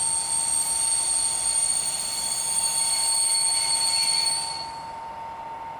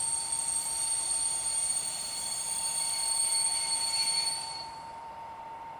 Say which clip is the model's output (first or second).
second